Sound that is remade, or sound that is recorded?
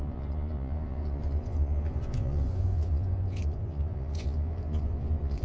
remade